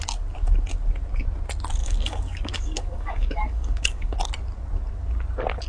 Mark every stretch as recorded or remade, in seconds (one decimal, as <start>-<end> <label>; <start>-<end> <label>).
0.0-1.8 recorded; 1.8-4.1 remade; 4.1-5.7 recorded